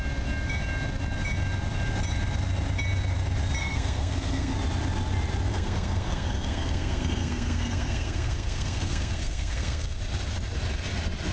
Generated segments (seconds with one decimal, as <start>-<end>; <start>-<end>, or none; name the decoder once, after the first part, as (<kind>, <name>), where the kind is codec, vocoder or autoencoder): 3.6-4.6 (codec, SNAC); 5.5-10.0